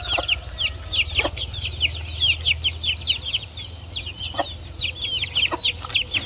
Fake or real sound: real